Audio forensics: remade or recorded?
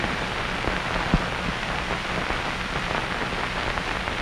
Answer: recorded